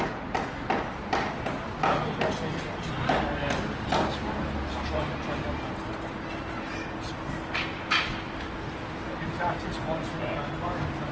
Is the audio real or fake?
real